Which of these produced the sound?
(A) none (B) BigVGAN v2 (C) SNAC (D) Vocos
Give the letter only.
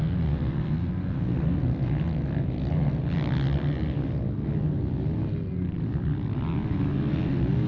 A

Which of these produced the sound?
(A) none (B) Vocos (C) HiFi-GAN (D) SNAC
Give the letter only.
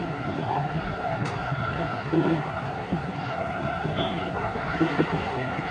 D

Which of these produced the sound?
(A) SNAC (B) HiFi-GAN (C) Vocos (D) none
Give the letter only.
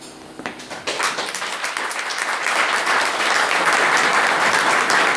D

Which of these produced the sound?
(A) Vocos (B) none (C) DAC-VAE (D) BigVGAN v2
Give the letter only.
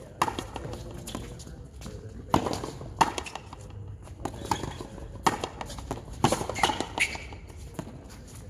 B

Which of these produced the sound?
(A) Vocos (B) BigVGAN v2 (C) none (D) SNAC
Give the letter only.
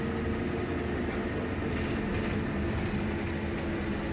C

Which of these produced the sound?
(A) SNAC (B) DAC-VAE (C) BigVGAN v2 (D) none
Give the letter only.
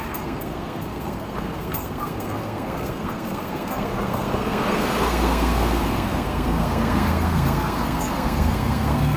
A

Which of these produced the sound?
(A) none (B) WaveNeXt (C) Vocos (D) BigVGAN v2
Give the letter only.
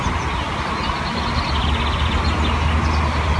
A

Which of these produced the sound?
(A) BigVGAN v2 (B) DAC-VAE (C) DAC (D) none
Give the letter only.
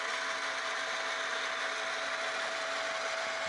D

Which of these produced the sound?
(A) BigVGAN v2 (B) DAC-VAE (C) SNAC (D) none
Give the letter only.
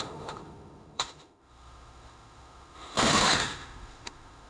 B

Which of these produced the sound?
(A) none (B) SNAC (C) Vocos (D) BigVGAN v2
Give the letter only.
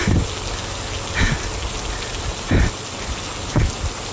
A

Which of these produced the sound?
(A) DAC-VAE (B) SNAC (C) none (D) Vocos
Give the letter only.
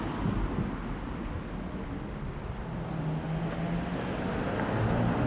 C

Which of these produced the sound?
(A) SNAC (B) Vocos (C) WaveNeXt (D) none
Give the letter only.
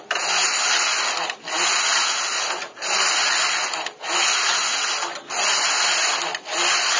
D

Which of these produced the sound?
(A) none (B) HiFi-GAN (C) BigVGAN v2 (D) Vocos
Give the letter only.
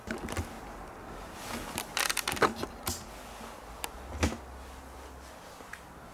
A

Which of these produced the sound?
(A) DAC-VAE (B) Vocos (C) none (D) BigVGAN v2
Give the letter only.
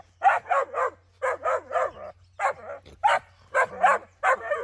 C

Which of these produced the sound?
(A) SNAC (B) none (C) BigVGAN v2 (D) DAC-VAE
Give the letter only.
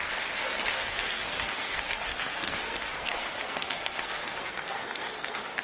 A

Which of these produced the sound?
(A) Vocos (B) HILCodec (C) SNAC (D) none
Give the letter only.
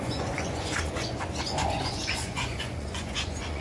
A